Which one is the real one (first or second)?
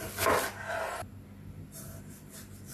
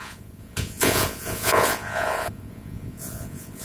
first